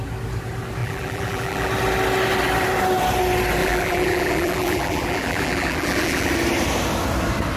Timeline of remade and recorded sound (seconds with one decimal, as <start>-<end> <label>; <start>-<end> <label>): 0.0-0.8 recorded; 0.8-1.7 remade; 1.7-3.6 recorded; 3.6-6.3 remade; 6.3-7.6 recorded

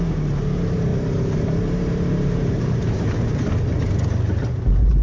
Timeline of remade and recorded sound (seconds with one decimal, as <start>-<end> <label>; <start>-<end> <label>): 0.0-0.9 recorded; 0.9-3.5 remade; 3.5-5.0 recorded

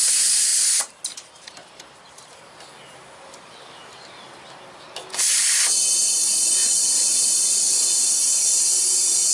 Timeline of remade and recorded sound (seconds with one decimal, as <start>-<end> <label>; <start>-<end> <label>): 0.0-0.5 recorded; 0.5-2.4 remade; 2.4-6.6 recorded; 6.6-8.0 remade; 8.0-9.3 recorded

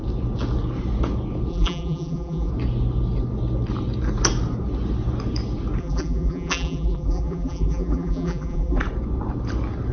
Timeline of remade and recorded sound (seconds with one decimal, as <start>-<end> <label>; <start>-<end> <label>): 0.0-1.5 recorded; 1.5-2.5 remade; 2.5-5.8 recorded; 5.8-8.8 remade; 8.8-9.9 recorded

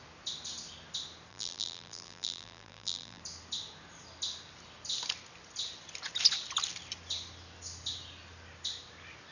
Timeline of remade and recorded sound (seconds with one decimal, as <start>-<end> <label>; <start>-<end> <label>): 0.0-1.3 recorded; 1.3-3.2 remade; 3.2-9.3 recorded